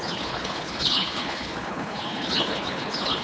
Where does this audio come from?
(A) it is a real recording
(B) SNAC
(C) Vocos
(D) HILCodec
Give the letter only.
D